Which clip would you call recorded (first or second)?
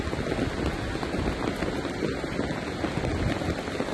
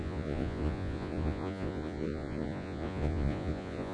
first